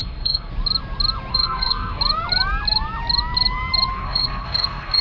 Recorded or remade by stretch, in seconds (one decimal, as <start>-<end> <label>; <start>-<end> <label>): 0.0-0.5 remade; 0.5-1.3 recorded; 1.3-2.0 remade; 2.0-3.9 recorded; 3.9-5.0 remade